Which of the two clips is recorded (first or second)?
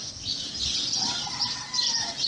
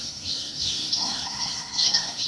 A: first